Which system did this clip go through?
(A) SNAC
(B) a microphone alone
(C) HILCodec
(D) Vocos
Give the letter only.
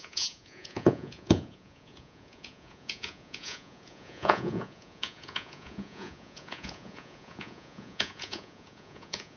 D